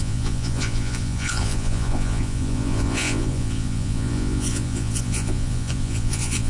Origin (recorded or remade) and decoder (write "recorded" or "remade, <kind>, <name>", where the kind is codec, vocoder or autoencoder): remade, vocoder, Vocos